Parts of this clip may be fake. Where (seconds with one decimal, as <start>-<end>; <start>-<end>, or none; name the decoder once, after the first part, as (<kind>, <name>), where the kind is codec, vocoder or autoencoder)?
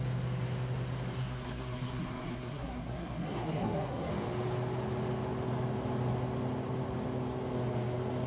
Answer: 1.2-4.1 (codec, SNAC)